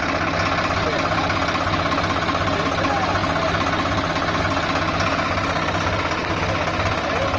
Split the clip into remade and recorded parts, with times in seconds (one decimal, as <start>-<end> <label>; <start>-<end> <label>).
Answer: 0.0-7.4 recorded